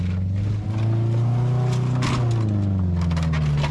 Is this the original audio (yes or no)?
yes